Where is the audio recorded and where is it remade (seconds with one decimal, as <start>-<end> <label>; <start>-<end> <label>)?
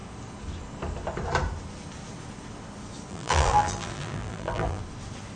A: 0.0-3.1 recorded; 3.1-4.8 remade; 4.8-5.4 recorded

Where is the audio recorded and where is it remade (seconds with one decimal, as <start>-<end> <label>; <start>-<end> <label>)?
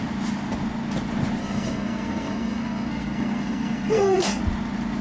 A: 0.0-1.4 recorded; 1.4-4.4 remade; 4.4-5.0 recorded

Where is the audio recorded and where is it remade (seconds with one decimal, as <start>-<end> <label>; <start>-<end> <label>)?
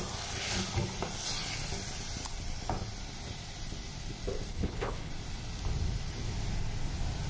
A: 0.0-4.5 recorded; 4.5-5.1 remade; 5.1-7.3 recorded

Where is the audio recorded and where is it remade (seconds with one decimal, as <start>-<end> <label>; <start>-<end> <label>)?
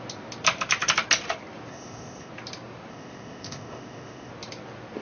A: 0.0-1.7 recorded; 1.7-2.3 remade; 2.3-2.9 recorded; 2.9-4.3 remade; 4.3-5.0 recorded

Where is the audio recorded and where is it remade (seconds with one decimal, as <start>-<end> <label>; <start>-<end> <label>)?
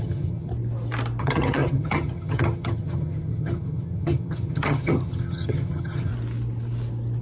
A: 0.0-0.5 remade; 0.5-1.2 recorded; 1.2-6.1 remade; 6.1-7.2 recorded